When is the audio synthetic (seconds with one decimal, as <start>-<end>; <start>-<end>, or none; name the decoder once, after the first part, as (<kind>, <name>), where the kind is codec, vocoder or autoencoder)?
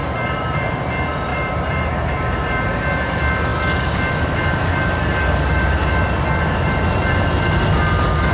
0.0-0.7 (vocoder, BigVGAN v2); 1.3-2.7